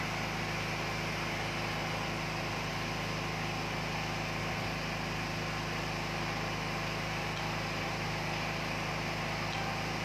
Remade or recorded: recorded